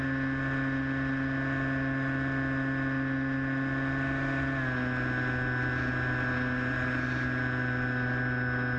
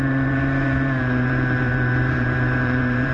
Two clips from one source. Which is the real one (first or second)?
first